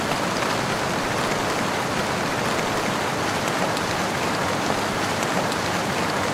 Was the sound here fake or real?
fake